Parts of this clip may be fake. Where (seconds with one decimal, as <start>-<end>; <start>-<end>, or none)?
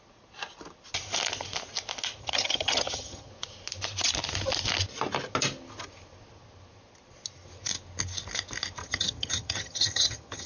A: 2.2-3.3; 8.8-10.5